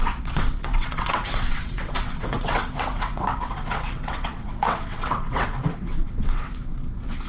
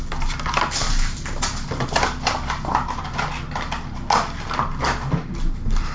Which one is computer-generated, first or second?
first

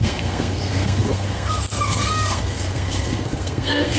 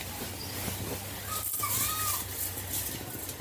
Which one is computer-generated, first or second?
first